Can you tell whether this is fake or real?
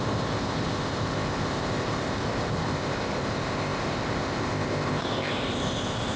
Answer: fake